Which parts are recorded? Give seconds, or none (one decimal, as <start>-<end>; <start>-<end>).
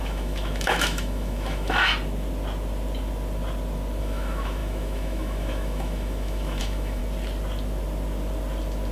1.9-4.0; 7.0-8.9